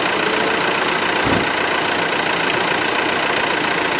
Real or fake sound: real